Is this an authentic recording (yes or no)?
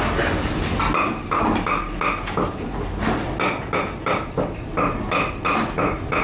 yes